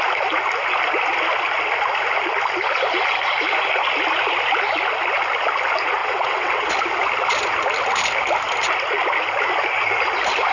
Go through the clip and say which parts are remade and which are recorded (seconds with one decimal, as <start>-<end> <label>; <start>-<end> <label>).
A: 0.0-6.0 recorded; 6.0-6.7 remade; 6.7-10.5 recorded